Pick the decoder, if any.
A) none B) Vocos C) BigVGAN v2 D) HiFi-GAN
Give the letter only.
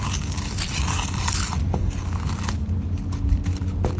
A